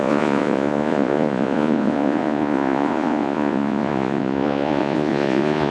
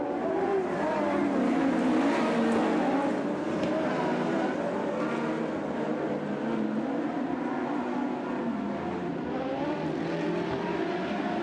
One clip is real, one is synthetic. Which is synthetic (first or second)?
first